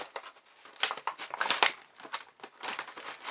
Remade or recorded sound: recorded